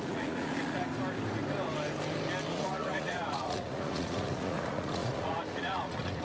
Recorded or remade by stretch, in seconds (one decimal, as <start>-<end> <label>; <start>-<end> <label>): 0.0-0.8 remade; 0.8-2.5 recorded; 2.5-6.2 remade